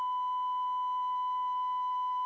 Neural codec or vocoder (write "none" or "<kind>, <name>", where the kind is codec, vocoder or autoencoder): autoencoder, DAC-VAE